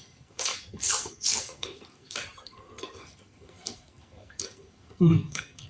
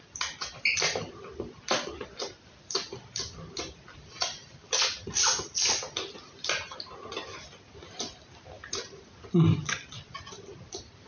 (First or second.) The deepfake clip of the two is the first